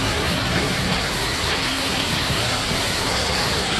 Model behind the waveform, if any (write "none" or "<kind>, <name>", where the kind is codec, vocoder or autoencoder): codec, SNAC